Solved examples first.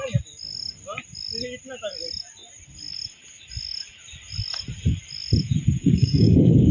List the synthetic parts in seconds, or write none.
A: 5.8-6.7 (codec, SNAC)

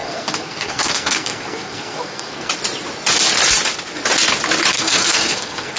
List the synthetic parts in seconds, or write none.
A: 0.0-2.5 (codec, SNAC); 4.7-5.8

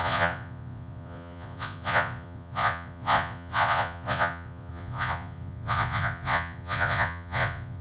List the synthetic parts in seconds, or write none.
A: 0.0-7.8 (vocoder, Vocos)

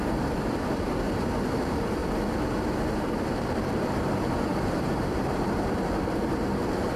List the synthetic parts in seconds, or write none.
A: 0.0-2.0 (vocoder, BigVGAN v2); 3.0-7.0